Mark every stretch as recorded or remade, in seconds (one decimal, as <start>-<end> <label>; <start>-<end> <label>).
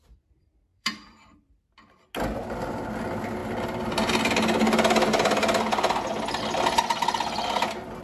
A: 0.0-0.7 recorded; 0.7-1.7 remade; 1.7-8.0 recorded